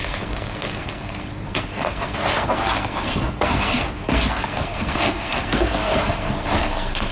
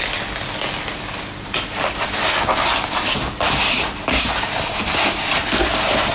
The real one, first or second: second